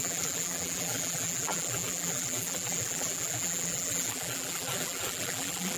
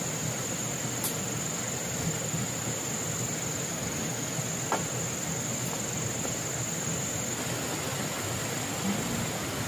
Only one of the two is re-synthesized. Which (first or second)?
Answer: first